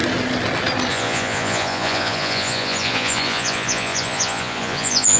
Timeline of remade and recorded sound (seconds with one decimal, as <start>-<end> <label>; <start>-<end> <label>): 0.0-0.9 recorded; 0.9-5.2 remade